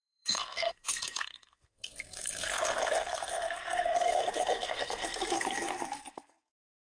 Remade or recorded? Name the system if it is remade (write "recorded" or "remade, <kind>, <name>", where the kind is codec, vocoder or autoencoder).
remade, codec, SNAC